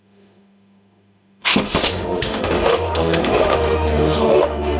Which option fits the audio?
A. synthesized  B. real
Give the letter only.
A